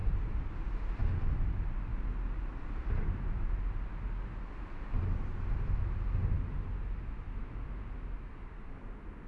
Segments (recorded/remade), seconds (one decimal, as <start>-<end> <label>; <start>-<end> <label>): 0.0-0.5 remade; 0.5-9.3 recorded